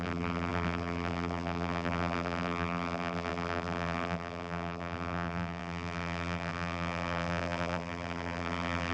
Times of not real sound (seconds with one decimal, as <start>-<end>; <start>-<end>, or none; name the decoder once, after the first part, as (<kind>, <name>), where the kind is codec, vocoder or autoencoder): 0.0-8.9 (vocoder, BigVGAN v2)